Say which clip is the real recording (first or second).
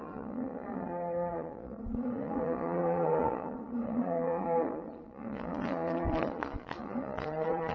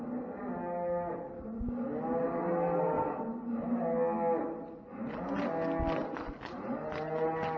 second